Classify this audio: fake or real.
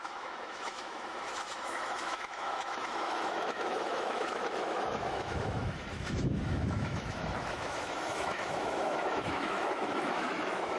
fake